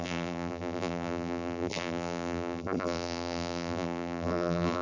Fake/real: fake